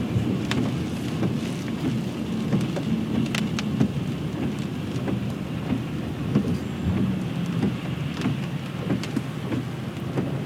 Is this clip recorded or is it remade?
recorded